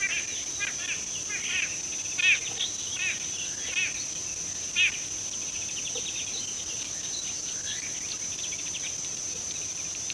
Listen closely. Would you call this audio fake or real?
real